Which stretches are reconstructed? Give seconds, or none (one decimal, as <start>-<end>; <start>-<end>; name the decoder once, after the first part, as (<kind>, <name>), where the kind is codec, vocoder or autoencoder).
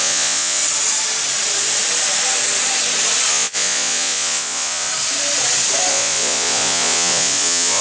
0.0-0.6 (vocoder, Vocos); 3.3-4.9; 5.9-7.8